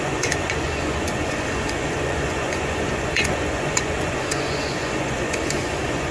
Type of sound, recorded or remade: remade